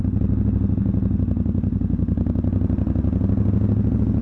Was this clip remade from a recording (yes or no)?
no